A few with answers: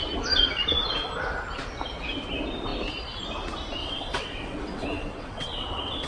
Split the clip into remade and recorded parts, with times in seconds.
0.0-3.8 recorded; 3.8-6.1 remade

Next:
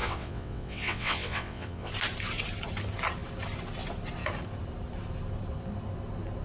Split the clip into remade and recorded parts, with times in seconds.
0.0-1.9 remade; 1.9-6.4 recorded

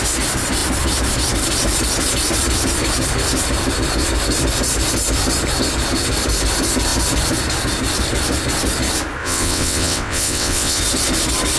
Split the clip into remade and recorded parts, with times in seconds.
0.0-9.2 recorded; 9.2-10.8 remade; 10.8-11.6 recorded

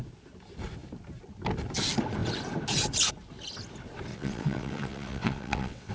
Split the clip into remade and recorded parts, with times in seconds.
0.0-4.1 recorded; 4.1-5.9 remade

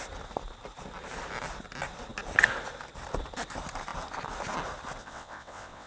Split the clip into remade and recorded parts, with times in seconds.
0.0-5.0 recorded; 5.0-5.9 remade

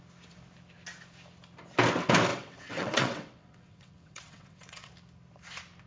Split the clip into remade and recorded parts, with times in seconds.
0.0-2.3 recorded; 2.3-4.9 remade; 4.9-5.9 recorded

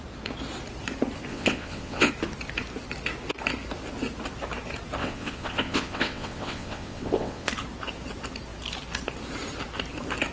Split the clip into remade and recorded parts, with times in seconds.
0.0-1.3 recorded; 1.3-2.1 remade; 2.1-5.0 recorded; 5.0-7.5 remade; 7.5-10.3 recorded